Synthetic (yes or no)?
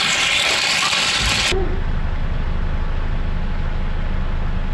no